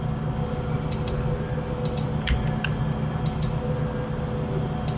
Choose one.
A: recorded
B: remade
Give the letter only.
A